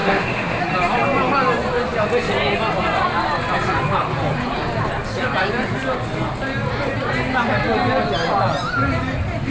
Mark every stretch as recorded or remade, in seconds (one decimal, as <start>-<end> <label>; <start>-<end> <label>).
0.0-0.6 remade; 0.6-9.5 recorded